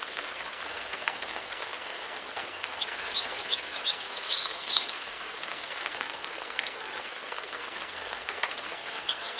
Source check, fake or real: fake